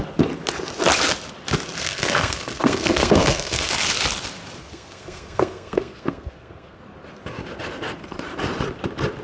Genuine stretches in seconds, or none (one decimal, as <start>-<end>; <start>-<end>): 0.0-1.8; 3.7-4.6; 6.8-9.2